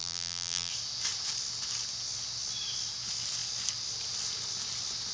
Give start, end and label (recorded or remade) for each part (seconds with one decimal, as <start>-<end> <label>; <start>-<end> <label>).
0.0-0.7 remade; 0.7-5.1 recorded

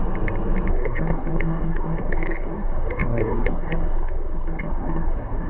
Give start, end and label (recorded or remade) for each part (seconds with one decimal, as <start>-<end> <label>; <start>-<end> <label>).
0.0-0.7 recorded; 0.7-5.5 remade

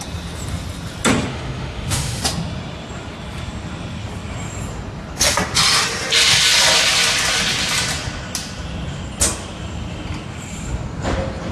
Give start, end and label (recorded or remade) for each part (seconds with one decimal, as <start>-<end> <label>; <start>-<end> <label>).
0.0-1.3 recorded; 1.3-2.2 remade; 2.2-11.5 recorded

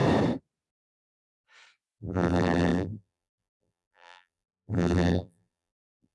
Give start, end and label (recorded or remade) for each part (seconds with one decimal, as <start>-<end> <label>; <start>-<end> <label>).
0.0-2.0 recorded; 2.0-6.1 remade

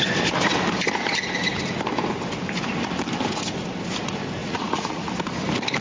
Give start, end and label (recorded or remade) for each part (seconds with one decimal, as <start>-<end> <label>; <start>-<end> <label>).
0.0-4.4 recorded; 4.4-5.1 remade; 5.1-5.8 recorded

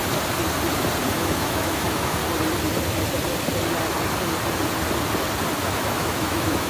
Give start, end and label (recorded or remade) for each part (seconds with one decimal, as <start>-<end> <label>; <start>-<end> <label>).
0.0-1.1 recorded; 1.1-2.2 remade; 2.2-5.6 recorded; 5.6-6.7 remade

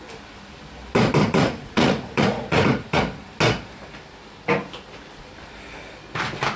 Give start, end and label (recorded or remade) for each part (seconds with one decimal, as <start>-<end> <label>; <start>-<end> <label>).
0.0-1.2 recorded; 1.2-3.0 remade; 3.0-6.6 recorded